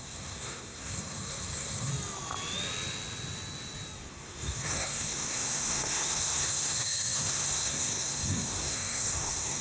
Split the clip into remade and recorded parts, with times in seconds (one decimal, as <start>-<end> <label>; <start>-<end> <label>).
0.0-1.9 remade; 1.9-4.1 recorded; 4.1-9.6 remade